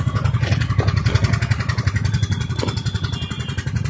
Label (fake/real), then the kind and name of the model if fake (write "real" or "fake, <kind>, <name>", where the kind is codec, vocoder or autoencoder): real